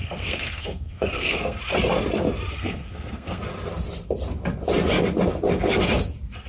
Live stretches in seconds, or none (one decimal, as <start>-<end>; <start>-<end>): 1.6-2.5; 3.4-6.5